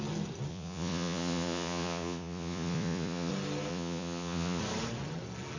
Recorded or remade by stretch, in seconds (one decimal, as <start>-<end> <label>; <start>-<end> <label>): 0.0-0.5 recorded; 0.5-3.3 remade; 3.3-3.7 recorded; 3.7-4.6 remade; 4.6-5.6 recorded